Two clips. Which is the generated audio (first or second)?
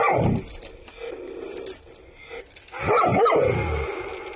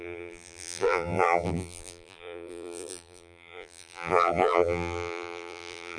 second